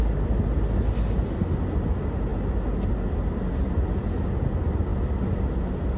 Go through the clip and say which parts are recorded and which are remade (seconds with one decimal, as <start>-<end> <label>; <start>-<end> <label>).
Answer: 0.0-6.0 recorded